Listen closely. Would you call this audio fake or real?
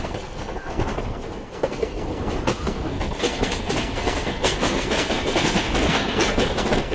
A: fake